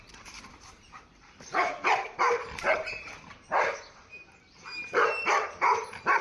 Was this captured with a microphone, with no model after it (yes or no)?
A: no